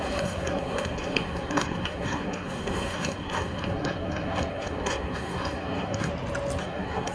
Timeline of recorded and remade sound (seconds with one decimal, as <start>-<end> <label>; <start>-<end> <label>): 0.0-6.1 remade; 6.1-6.6 recorded; 6.6-7.1 remade